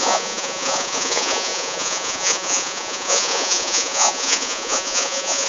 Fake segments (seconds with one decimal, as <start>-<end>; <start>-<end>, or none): 0.0-5.5